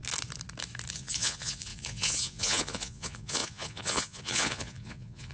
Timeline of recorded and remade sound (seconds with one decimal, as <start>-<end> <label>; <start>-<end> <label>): 0.0-0.9 recorded; 0.9-5.3 remade